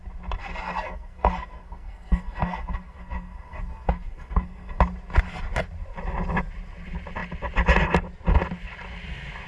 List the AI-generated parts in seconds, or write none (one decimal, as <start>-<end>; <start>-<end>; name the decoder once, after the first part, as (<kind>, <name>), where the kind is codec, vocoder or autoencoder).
0.4-4.8 (codec, SNAC)